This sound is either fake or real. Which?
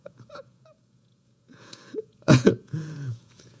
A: fake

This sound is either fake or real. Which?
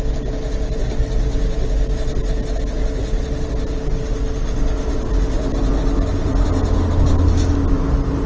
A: real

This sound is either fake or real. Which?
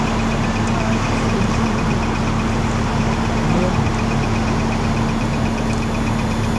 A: real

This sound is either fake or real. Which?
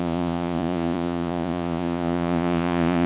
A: fake